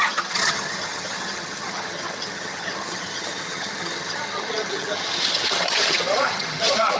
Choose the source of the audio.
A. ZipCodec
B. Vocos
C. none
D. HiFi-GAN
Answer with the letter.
D